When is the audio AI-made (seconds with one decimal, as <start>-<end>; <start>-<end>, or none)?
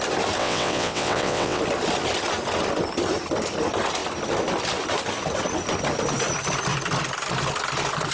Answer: 0.4-1.6